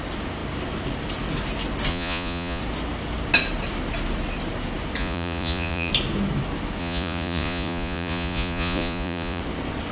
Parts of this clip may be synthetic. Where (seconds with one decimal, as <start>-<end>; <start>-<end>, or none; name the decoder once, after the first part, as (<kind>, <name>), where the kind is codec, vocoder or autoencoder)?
1.9-2.6 (vocoder, Vocos); 5.0-5.9; 6.8-9.4